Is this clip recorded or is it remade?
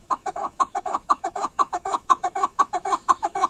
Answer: remade